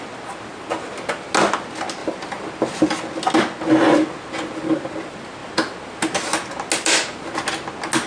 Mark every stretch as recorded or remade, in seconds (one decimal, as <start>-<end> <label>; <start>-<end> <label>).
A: 0.0-2.0 recorded; 2.0-2.9 remade; 2.9-8.1 recorded